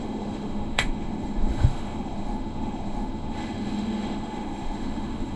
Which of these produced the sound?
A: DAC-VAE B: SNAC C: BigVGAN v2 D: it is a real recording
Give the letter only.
A